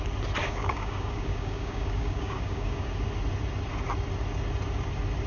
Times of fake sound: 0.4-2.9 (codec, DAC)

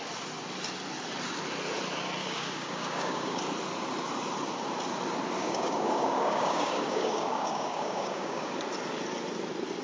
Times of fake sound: 2.2-3.4 (codec, DAC); 5.4-8.5

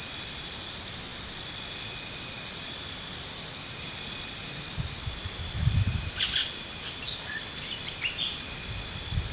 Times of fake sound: none

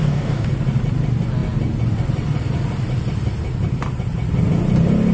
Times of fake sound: 0.0-0.5 (codec, DAC)

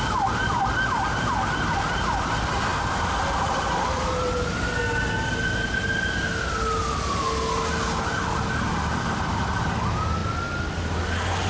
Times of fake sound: none

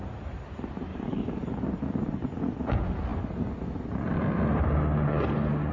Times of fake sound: 0.9-1.5 (codec, DAC)

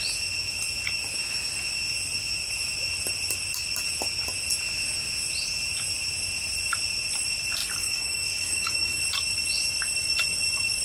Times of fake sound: 7.6-9.0 (codec, DAC)